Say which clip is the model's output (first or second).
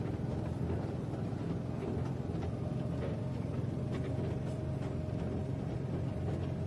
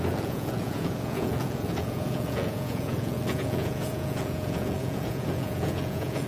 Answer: second